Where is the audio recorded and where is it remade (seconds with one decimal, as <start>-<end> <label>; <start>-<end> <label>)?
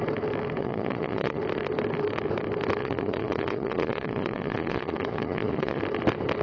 0.0-0.6 recorded; 0.6-1.4 remade; 1.4-2.8 recorded; 2.8-5.8 remade; 5.8-6.4 recorded